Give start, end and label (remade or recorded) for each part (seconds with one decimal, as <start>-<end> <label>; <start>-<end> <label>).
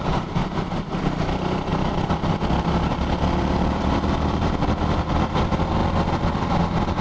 0.0-1.7 remade; 1.7-2.5 recorded; 2.5-5.8 remade; 5.8-6.3 recorded; 6.3-7.0 remade